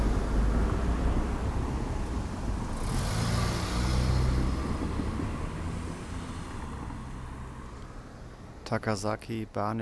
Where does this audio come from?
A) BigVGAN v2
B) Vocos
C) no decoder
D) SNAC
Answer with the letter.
C